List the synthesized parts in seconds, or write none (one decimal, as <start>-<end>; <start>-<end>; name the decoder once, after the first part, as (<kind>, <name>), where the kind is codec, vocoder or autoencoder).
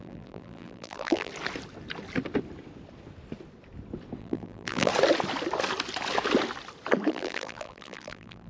0.0-1.3 (vocoder, BigVGAN v2); 4.2-4.9; 7.1-8.5